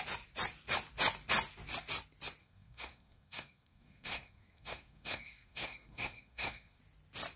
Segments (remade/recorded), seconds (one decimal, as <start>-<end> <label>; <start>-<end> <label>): 0.0-2.4 recorded; 2.4-6.8 remade; 6.8-7.4 recorded